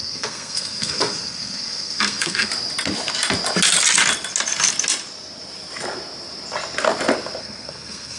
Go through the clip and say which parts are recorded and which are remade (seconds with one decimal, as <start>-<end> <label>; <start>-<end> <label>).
0.0-2.5 remade; 2.5-7.4 recorded; 7.4-8.2 remade